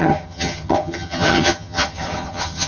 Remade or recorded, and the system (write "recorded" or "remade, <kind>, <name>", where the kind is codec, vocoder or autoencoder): remade, vocoder, HiFi-GAN